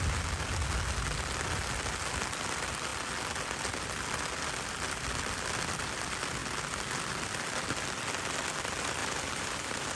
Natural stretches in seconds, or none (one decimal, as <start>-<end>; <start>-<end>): 0.0-9.0